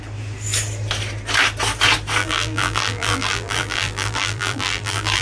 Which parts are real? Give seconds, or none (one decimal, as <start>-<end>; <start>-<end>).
0.0-2.2